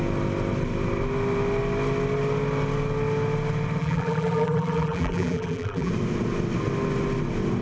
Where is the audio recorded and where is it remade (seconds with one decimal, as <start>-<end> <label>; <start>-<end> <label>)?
0.0-3.8 recorded; 3.8-5.9 remade; 5.9-7.6 recorded